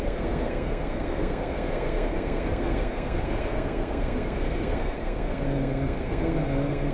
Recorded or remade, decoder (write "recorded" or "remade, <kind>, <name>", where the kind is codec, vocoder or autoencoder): remade, codec, SNAC